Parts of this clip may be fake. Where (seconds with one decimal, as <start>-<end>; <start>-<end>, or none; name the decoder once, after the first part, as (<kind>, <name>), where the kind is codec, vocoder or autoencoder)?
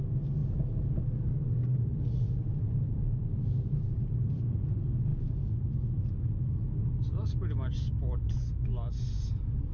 0.4-4.6 (vocoder, BigVGAN v2); 5.1-5.7